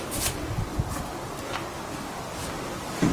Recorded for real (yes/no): yes